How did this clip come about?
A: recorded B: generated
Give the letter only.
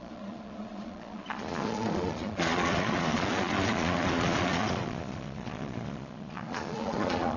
B